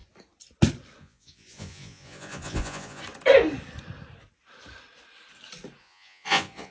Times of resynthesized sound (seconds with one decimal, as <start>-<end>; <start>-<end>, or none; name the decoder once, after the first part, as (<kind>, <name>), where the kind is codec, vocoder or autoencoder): 1.0-3.0 (vocoder, Vocos); 5.8-6.7